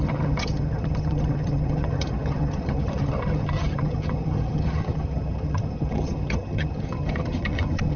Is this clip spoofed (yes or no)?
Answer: yes